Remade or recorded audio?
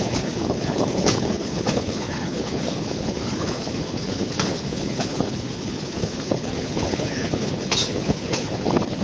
remade